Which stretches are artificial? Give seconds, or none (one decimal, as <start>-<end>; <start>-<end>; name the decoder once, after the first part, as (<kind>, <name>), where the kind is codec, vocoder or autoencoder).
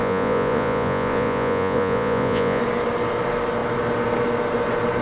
0.0-2.6 (vocoder, Vocos)